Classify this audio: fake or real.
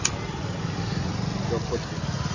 real